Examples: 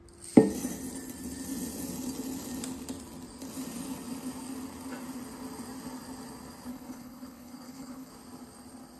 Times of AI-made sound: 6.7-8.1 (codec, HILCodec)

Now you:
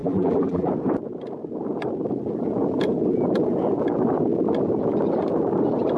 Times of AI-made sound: 0.0-0.7 (vocoder, BigVGAN v2)

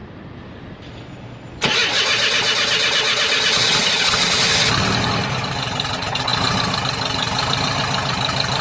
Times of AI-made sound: none

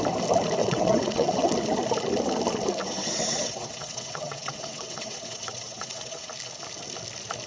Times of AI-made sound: 0.6-1.5 (vocoder, WaveNeXt); 2.8-6.3